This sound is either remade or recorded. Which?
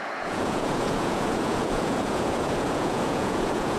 remade